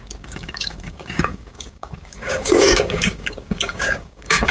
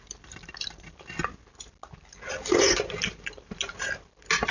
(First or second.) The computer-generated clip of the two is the first